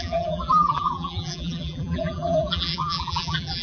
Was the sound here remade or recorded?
remade